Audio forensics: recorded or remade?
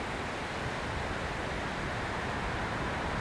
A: recorded